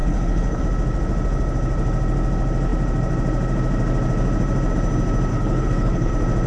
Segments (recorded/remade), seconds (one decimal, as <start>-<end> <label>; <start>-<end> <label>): 0.0-0.6 remade; 0.6-5.3 recorded; 5.3-6.1 remade; 6.1-6.5 recorded